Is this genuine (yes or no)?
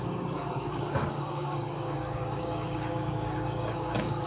no